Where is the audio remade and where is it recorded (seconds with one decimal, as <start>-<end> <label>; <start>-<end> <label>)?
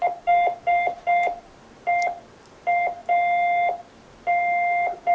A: 0.0-5.1 recorded